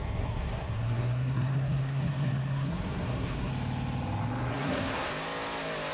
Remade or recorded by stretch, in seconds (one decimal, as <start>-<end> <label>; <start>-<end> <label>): 0.0-3.5 remade; 3.5-4.5 recorded; 4.5-5.1 remade; 5.1-5.9 recorded